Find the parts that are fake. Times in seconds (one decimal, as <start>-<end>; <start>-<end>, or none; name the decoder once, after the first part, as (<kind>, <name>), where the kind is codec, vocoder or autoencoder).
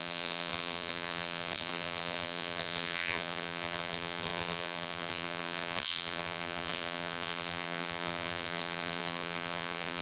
0.0-10.0 (vocoder, BigVGAN v2)